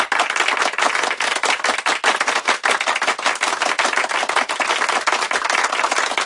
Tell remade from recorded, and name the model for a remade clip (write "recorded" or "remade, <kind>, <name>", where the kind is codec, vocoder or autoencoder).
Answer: recorded